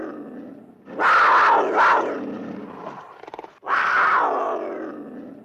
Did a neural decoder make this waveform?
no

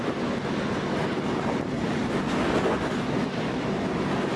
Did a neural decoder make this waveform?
no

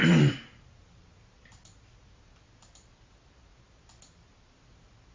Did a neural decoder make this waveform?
no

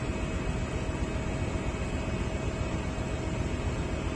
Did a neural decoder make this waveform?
no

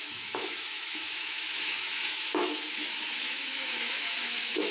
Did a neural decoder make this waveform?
yes